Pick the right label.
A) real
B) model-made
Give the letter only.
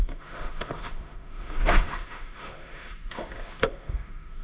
B